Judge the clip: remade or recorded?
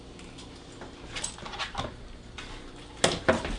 recorded